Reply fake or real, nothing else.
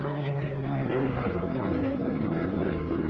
fake